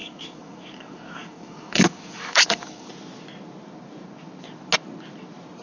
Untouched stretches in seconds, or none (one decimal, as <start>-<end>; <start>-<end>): 2.9-5.6